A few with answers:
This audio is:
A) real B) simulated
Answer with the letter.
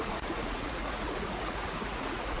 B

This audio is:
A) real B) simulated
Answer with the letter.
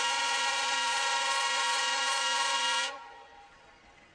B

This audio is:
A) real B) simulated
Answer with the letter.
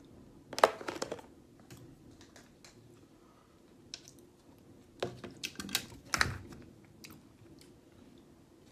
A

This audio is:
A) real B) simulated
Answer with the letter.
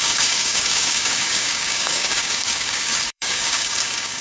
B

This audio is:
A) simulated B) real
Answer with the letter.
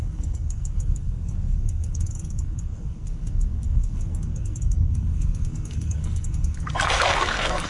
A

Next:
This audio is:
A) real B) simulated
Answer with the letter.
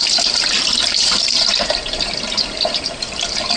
B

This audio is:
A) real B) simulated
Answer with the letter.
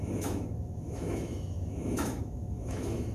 B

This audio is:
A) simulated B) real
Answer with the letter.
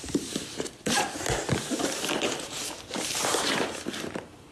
A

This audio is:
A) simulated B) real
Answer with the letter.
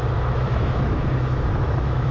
A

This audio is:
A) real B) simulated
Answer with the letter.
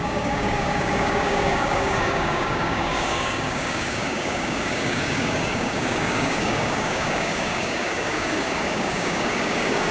B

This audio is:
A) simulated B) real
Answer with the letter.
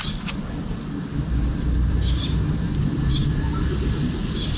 B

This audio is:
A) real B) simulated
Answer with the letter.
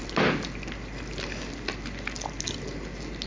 A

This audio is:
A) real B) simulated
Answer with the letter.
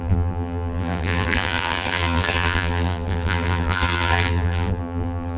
B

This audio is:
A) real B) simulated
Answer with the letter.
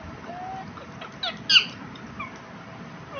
A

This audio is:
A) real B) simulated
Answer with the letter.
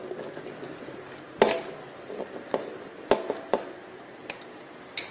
A